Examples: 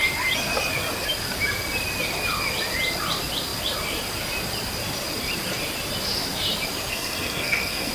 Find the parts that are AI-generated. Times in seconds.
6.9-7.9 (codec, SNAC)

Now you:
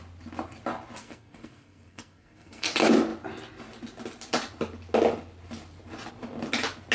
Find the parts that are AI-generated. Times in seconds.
1.0-2.7 (codec, SNAC)

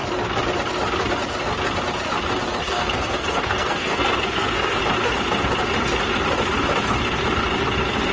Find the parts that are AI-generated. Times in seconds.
2.6-4.8 (codec, SNAC)

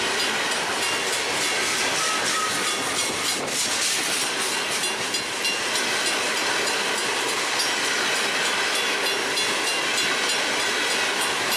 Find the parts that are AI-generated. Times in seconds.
none

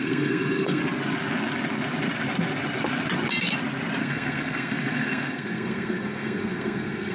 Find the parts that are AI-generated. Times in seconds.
0.0-0.8 (codec, SNAC); 4.0-7.1

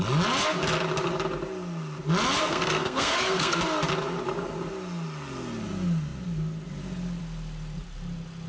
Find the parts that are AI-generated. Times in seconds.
2.4-3.6 (codec, SNAC)